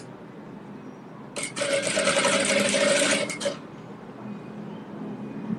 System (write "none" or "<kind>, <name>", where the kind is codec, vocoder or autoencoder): none